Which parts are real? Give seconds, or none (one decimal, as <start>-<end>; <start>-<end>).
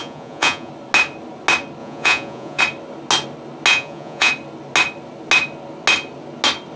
0.7-1.8; 2.6-3.7; 4.3-6.8